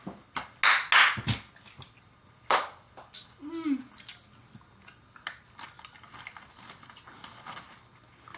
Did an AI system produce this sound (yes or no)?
no